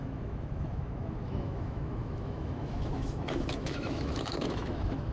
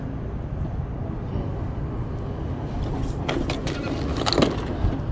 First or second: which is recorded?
second